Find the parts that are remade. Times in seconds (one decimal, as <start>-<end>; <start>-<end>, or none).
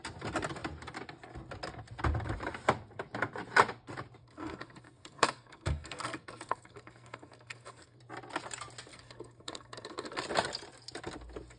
4.2-8.0; 8.9-10.2